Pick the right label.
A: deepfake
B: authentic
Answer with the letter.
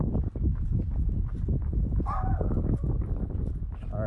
B